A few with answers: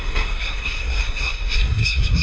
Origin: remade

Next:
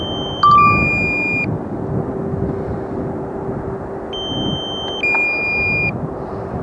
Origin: recorded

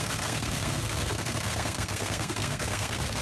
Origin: remade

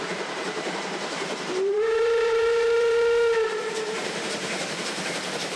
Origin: remade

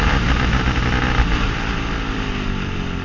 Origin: recorded